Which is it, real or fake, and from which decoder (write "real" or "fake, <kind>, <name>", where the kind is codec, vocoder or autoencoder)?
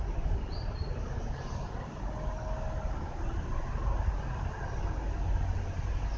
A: real